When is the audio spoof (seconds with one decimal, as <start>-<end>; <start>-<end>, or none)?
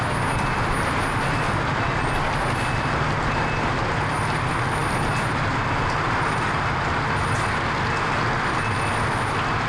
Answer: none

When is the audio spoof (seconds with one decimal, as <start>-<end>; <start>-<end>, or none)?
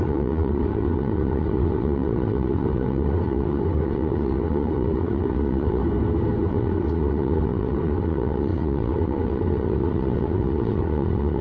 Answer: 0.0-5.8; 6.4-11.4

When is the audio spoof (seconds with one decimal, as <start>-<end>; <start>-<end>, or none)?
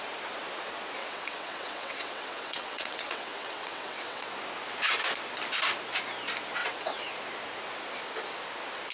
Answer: 1.0-4.3; 6.6-7.1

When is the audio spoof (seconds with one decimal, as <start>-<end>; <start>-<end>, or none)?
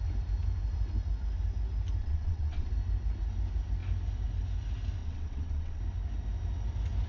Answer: 2.0-2.7; 5.0-5.8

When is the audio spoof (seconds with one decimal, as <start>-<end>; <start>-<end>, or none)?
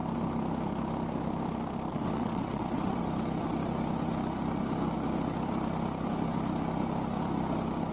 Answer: 1.9-3.0